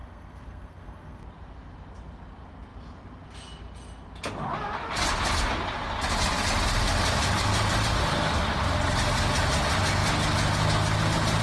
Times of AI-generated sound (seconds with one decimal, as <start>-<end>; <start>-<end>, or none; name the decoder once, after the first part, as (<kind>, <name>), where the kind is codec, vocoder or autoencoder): 0.0-1.2 (codec, SNAC)